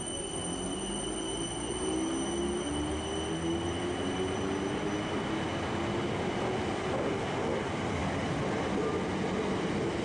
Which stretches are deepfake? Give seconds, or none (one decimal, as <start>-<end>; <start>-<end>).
none

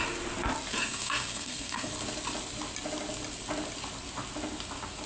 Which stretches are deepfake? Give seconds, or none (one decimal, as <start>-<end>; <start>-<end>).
0.7-1.9

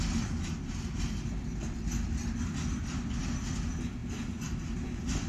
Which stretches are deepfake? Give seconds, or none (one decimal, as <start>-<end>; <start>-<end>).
none

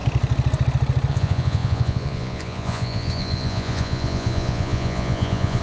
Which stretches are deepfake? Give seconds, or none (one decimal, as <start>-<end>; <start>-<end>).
1.1-5.6